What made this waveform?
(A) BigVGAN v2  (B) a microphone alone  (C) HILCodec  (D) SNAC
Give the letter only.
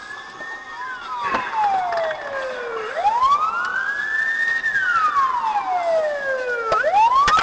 B